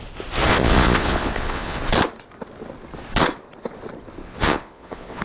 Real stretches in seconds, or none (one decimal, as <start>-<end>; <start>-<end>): 0.0-0.5; 1.8-4.2